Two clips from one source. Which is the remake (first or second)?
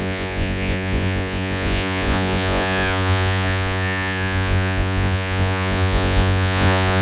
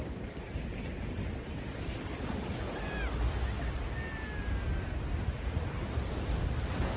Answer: first